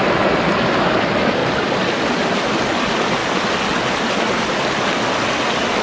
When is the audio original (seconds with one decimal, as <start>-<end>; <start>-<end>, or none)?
0.0-5.8